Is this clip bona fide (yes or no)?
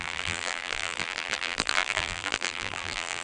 no